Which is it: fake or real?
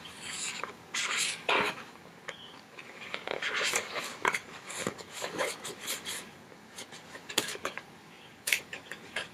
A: fake